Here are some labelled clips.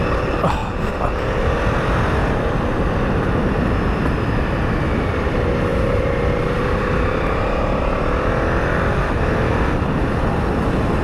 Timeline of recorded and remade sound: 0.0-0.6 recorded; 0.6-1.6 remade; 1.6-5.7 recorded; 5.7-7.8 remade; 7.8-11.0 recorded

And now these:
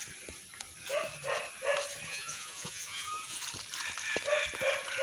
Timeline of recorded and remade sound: 0.0-2.1 recorded; 2.1-3.4 remade; 3.4-5.0 recorded

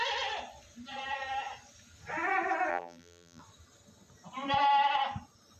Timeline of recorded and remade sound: 0.0-2.7 recorded; 2.7-3.4 remade; 3.4-5.6 recorded

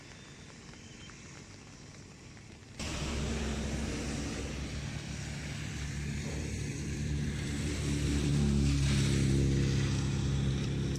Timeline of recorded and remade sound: 0.0-2.6 remade; 2.6-5.6 recorded; 5.6-8.3 remade; 8.3-10.5 recorded; 10.5-11.0 remade

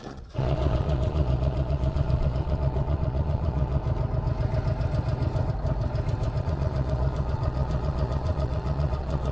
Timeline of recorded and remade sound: 0.0-3.8 remade; 3.8-6.4 recorded; 6.4-9.3 remade

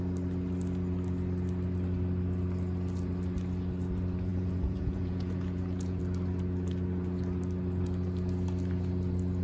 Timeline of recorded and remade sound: 0.0-4.3 recorded; 4.3-6.0 remade; 6.0-9.4 recorded